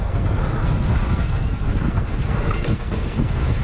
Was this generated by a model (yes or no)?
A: yes